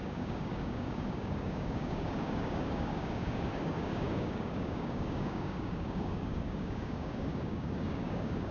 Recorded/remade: remade